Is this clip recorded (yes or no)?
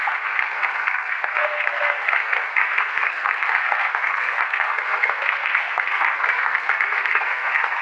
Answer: no